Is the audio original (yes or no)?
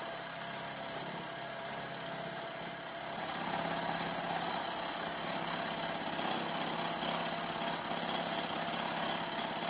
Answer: yes